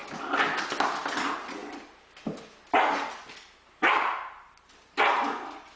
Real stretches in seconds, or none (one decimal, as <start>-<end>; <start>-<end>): 0.0-5.8